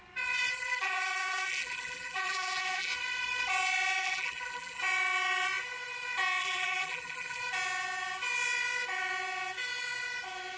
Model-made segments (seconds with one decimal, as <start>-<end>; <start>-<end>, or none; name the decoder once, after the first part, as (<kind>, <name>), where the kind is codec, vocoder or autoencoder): 0.5-2.9 (vocoder, BigVGAN v2); 4.0-4.8; 6.4-7.4